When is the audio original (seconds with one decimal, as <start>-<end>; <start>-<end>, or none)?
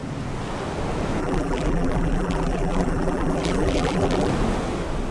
0.0-1.2; 4.3-5.1